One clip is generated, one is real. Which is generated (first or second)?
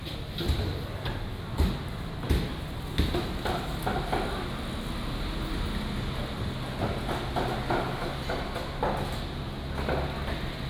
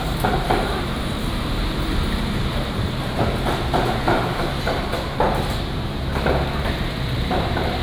second